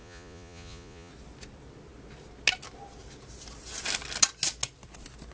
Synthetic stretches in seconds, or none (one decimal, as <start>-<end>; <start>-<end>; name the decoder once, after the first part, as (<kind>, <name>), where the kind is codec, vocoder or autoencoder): 0.0-1.1 (vocoder, Vocos)